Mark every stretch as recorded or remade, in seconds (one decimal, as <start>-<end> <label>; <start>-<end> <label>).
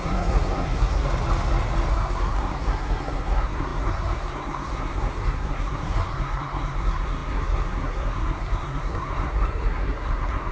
0.0-1.1 remade; 1.1-1.9 recorded; 1.9-10.5 remade